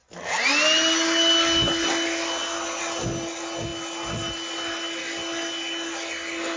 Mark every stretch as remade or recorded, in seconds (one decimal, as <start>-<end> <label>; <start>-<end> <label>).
0.0-6.6 recorded